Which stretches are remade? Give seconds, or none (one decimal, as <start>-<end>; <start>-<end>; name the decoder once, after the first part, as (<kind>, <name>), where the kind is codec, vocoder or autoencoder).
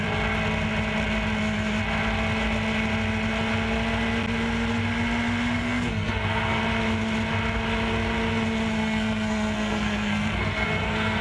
5.6-6.6 (codec, SNAC); 8.8-11.2